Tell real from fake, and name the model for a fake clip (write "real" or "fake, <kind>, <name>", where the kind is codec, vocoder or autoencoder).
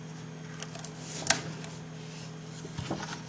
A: real